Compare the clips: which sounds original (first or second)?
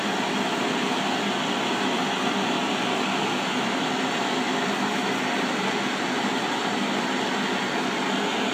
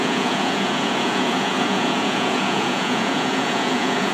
first